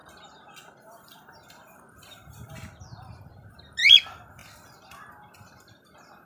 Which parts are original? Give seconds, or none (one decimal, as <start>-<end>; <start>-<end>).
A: 3.8-4.4; 5.1-6.3